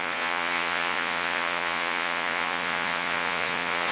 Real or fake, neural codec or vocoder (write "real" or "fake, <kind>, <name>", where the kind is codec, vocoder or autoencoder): fake, vocoder, Vocos